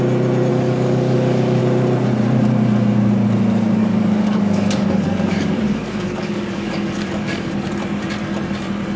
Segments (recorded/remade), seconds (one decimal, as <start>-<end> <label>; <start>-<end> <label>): 0.0-0.5 recorded; 0.5-1.6 remade; 1.6-3.8 recorded; 3.8-7.7 remade; 7.7-9.0 recorded